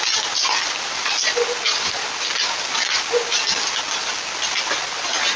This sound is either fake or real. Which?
real